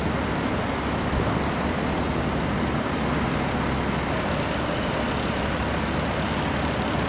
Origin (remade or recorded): recorded